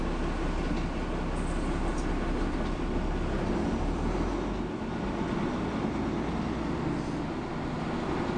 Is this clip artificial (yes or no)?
no